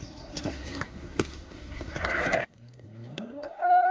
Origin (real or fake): fake